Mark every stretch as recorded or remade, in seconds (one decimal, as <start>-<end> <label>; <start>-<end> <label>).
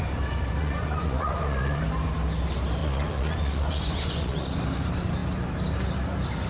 0.0-0.6 recorded; 0.6-1.8 remade; 1.8-2.8 recorded; 2.8-4.6 remade; 4.6-6.5 recorded